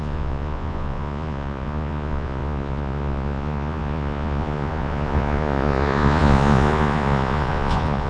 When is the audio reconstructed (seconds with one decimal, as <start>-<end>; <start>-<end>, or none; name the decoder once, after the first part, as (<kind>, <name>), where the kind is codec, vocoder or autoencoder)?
0.0-8.1 (vocoder, Vocos)